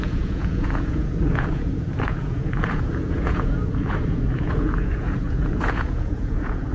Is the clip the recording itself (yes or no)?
no